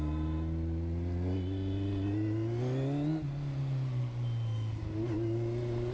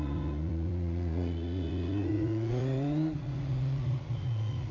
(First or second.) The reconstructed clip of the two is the second